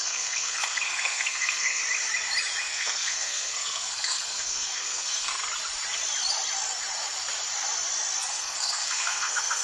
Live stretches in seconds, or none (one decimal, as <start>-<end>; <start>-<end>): 1.8-2.6; 5.3-8.3